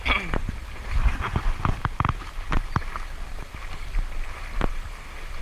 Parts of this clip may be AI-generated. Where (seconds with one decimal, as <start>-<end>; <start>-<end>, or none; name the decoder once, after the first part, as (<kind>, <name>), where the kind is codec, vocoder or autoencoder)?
none